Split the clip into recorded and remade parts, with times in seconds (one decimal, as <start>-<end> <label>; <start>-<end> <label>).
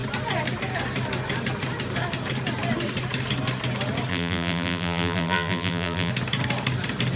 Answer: 0.0-4.1 recorded; 4.1-6.1 remade; 6.1-7.2 recorded